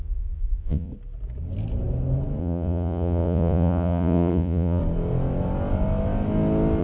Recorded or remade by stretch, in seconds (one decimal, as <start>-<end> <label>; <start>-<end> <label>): 0.0-0.9 remade; 0.9-2.4 recorded; 2.4-4.8 remade; 4.8-6.8 recorded